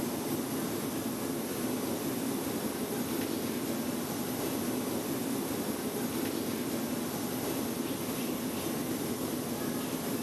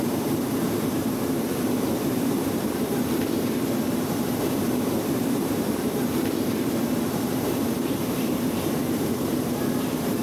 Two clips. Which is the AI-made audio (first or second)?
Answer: second